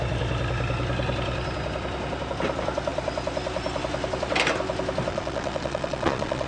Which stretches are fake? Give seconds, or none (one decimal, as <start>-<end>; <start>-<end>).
5.1-6.5